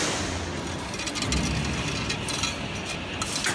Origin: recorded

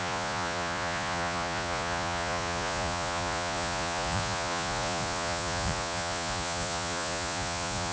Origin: remade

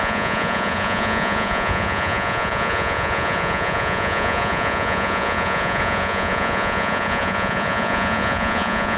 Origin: remade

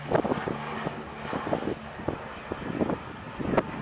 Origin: recorded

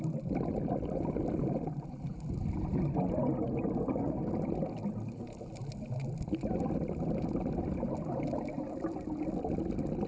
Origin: recorded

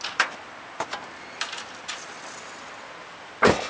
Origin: recorded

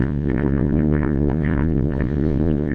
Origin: remade